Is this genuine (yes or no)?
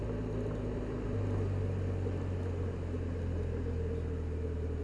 yes